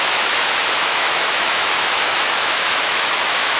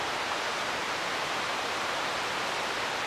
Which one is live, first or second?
second